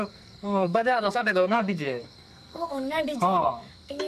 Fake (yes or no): yes